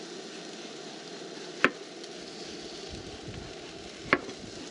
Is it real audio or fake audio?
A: real